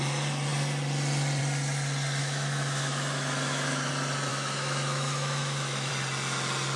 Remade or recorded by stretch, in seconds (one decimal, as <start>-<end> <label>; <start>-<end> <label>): 0.0-2.2 recorded; 2.2-3.9 remade; 3.9-4.3 recorded; 4.3-5.9 remade; 5.9-6.8 recorded

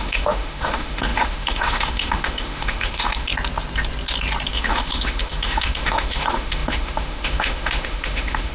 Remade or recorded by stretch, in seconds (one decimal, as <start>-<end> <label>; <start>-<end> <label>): 0.0-3.3 remade; 3.3-4.5 recorded; 4.5-8.5 remade

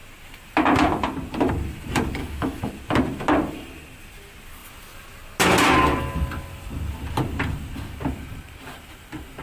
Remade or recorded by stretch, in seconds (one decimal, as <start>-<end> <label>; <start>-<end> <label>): 0.0-2.2 recorded; 2.2-2.7 remade; 2.7-9.4 recorded

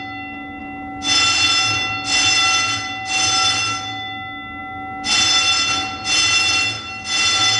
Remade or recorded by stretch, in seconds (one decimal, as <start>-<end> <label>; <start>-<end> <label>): 0.0-7.6 recorded

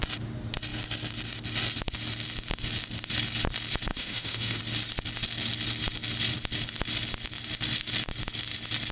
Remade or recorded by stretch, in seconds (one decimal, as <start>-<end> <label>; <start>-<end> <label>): 0.0-3.9 recorded; 3.9-4.6 remade; 4.6-8.9 recorded

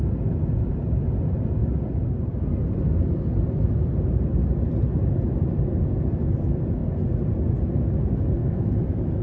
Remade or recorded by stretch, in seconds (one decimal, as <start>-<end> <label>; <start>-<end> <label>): 0.0-8.4 recorded; 8.4-9.2 remade

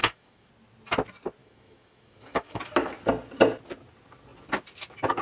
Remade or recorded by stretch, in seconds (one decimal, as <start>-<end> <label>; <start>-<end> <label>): 0.0-0.5 remade; 0.5-1.4 recorded; 1.4-2.6 remade; 2.6-5.2 recorded